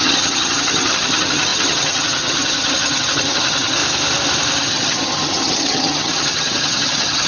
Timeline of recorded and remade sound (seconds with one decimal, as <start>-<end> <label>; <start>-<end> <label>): 0.0-3.8 remade; 3.8-4.6 recorded; 4.6-7.3 remade